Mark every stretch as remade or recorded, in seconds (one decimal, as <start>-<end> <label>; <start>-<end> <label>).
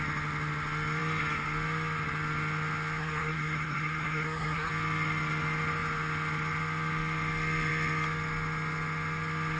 0.0-3.0 recorded; 3.0-4.7 remade; 4.7-9.6 recorded